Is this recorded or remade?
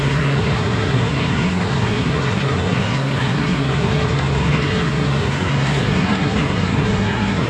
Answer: remade